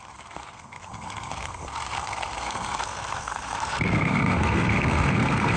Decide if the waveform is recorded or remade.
remade